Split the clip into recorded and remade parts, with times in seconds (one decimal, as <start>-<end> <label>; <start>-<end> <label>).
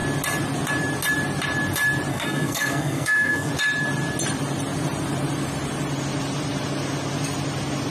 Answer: 0.0-2.1 recorded; 2.1-3.5 remade; 3.5-7.9 recorded